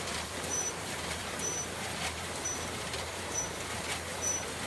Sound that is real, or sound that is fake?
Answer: fake